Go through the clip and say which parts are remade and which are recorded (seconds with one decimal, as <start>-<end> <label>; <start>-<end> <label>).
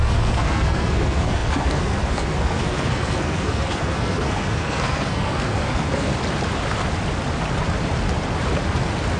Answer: 0.0-6.1 remade; 6.1-9.2 recorded